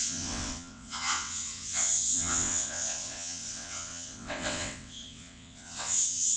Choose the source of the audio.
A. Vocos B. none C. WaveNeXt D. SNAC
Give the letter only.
C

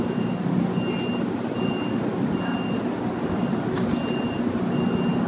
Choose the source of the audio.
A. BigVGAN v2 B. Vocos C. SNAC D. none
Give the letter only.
D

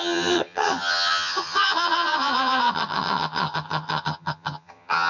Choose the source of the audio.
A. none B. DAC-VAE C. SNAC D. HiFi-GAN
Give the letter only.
D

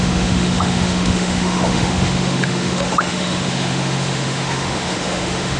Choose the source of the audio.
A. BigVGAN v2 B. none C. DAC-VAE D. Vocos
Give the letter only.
C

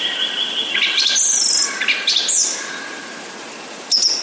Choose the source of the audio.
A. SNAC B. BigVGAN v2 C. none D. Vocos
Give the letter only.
C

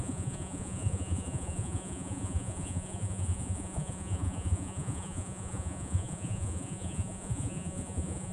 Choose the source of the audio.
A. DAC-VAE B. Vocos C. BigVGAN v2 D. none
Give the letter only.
B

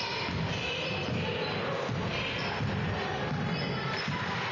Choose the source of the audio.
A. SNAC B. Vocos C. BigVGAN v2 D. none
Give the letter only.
D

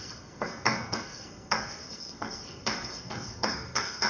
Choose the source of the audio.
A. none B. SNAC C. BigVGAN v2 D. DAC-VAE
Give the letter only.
B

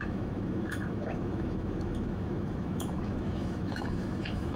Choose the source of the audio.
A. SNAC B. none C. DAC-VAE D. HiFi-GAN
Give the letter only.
C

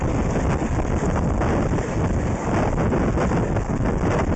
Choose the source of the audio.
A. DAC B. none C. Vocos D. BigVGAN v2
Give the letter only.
B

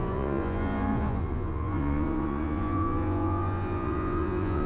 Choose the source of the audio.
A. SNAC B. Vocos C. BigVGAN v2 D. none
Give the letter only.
B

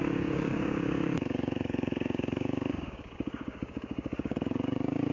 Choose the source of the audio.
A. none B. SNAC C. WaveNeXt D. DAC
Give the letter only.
D